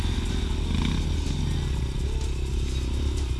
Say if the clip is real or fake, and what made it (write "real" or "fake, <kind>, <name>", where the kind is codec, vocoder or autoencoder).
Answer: real